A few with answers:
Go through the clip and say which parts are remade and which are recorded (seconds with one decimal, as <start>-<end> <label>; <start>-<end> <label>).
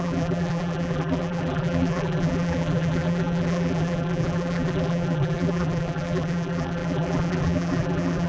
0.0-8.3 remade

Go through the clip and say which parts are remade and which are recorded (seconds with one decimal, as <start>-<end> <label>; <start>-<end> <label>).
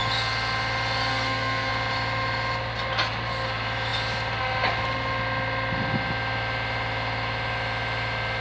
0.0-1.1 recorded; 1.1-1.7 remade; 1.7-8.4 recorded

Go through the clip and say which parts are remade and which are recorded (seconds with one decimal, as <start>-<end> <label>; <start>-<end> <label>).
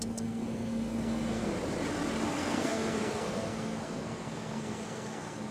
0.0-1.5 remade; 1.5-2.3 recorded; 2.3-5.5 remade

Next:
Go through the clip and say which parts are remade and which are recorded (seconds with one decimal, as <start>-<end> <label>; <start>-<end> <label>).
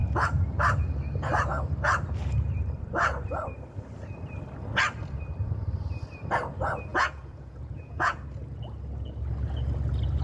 0.0-6.9 recorded; 6.9-8.2 remade; 8.2-10.2 recorded